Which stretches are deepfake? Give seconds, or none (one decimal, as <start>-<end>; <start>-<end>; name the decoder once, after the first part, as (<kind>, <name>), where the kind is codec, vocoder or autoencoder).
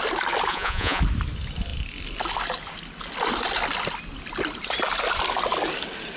0.5-1.0 (vocoder, Vocos)